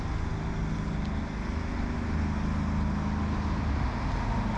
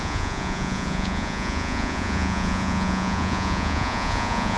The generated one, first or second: second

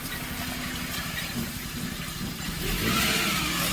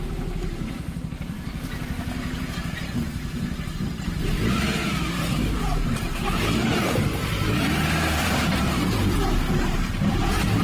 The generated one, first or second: second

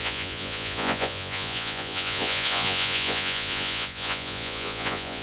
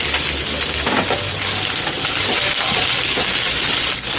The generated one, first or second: first